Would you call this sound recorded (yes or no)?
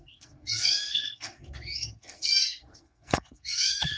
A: no